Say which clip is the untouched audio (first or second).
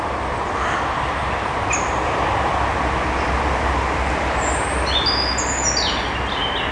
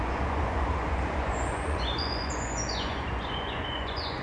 first